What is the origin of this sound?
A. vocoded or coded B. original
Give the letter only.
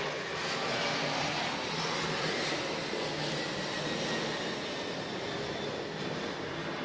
B